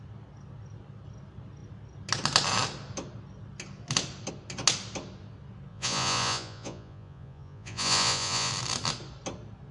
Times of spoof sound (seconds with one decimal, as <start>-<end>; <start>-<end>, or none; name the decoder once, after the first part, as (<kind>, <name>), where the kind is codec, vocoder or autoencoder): 5.7-8.5 (vocoder, Vocos)

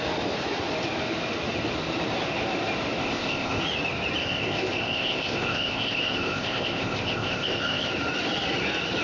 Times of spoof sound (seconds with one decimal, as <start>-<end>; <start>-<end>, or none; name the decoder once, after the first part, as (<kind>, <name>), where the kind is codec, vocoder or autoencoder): 3.0-3.6 (codec, ZipCodec); 4.2-7.9

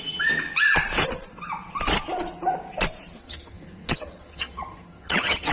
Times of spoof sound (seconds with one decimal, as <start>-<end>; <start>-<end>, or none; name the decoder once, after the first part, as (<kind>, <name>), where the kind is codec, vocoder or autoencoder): 3.2-5.5 (vocoder, HiFi-GAN)

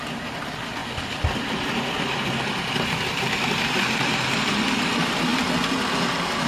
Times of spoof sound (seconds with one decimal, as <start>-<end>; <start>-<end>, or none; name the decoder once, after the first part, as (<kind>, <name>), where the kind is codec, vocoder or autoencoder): 0.8-4.7 (vocoder, BigVGAN v2)

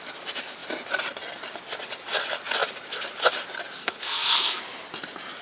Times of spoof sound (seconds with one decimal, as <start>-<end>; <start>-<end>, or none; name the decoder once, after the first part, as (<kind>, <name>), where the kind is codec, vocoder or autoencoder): 3.8-4.6 (codec, SNAC)

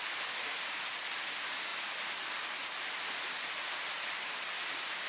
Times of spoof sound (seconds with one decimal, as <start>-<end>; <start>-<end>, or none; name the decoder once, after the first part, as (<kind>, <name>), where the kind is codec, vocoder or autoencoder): none

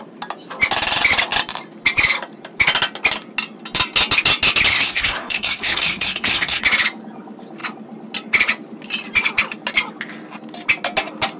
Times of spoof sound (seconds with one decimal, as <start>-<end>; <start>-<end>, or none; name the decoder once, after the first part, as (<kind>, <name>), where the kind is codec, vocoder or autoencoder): 4.7-6.6 (codec, SNAC)

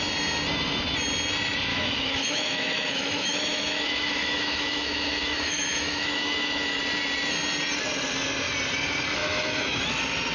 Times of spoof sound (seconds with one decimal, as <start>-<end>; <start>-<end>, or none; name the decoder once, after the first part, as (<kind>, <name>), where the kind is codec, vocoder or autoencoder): 1.7-6.8 (autoencoder, DAC-VAE); 9.2-9.8